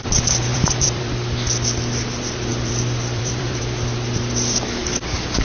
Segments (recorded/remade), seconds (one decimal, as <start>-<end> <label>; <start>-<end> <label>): 0.0-0.5 recorded; 0.5-1.1 remade; 1.1-2.5 recorded; 2.5-3.6 remade; 3.6-4.8 recorded; 4.8-5.4 remade

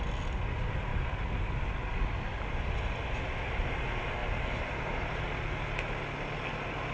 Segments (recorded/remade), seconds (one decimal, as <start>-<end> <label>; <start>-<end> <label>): 0.0-0.9 recorded; 0.9-1.5 remade; 1.5-4.2 recorded; 4.2-5.0 remade; 5.0-6.9 recorded

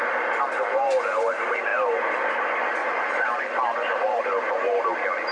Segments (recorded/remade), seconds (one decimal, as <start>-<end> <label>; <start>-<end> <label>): 0.0-2.8 recorded; 2.8-4.2 remade; 4.2-5.3 recorded

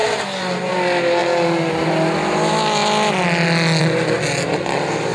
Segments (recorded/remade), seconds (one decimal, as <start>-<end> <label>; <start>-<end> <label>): 0.0-0.7 remade; 0.7-5.1 recorded

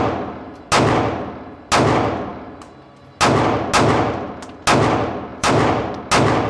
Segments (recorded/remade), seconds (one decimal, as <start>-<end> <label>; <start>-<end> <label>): 0.0-5.3 recorded; 5.3-5.9 remade; 5.9-6.5 recorded